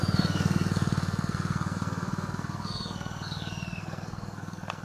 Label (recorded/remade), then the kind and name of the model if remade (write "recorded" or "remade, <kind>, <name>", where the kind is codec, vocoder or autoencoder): remade, codec, SNAC